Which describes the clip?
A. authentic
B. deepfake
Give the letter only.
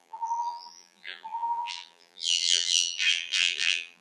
B